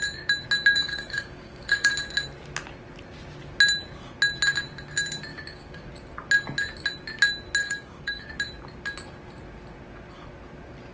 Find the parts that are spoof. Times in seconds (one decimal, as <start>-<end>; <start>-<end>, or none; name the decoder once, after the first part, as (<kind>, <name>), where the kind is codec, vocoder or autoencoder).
0.7-1.9 (codec, DAC); 5.3-5.9; 7.6-8.3